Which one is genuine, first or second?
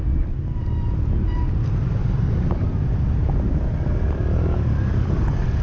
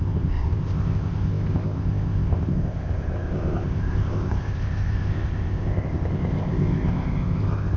first